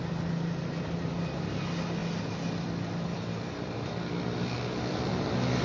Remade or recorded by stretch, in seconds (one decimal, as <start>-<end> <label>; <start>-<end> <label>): 0.0-5.6 recorded